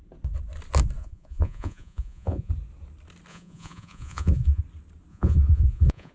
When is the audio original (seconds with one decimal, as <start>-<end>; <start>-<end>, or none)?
0.0-1.0; 2.5-3.3; 4.6-5.1